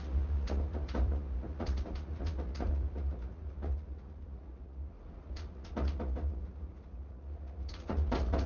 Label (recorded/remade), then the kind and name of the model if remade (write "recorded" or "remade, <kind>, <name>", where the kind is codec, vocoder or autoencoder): remade, vocoder, Vocos